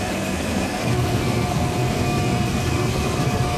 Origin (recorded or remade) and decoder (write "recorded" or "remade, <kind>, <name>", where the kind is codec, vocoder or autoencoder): remade, codec, SNAC